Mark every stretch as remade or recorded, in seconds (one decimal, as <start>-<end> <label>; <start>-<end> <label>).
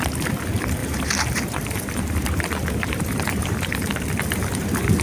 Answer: 0.0-0.8 recorded; 0.8-3.7 remade; 3.7-5.0 recorded